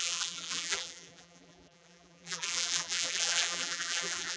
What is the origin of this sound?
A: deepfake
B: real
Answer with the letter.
A